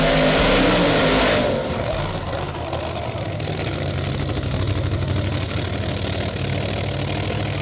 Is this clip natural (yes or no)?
yes